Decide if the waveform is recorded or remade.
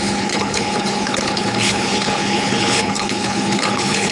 remade